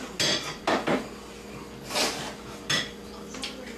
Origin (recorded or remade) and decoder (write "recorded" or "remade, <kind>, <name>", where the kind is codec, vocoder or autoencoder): recorded